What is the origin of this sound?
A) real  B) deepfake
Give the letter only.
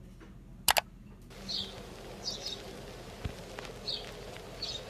A